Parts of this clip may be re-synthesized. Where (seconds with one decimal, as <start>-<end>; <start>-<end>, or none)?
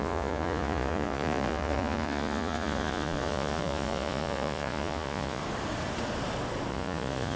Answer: 0.0-5.4; 6.7-7.4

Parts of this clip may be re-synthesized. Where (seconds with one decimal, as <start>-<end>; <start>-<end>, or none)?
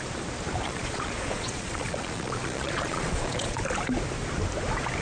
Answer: 0.6-3.6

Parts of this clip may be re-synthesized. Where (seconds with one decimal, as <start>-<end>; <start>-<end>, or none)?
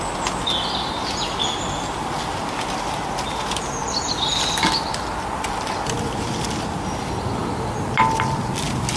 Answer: none